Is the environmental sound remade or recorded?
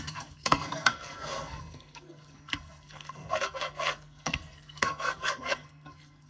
remade